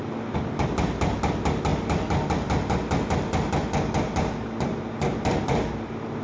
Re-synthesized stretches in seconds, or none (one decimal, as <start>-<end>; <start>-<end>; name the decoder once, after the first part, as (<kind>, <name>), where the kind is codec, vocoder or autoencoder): none